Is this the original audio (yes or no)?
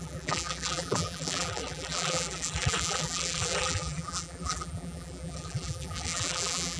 no